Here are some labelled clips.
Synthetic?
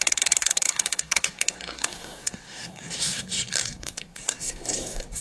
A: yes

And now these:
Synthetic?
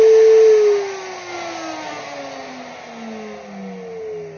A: no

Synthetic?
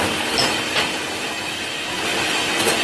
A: no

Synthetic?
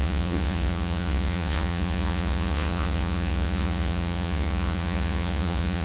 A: yes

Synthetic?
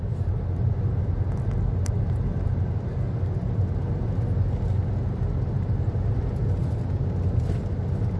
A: no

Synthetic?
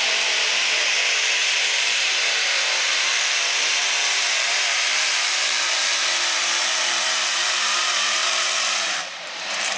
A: yes